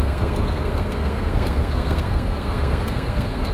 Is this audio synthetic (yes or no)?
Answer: yes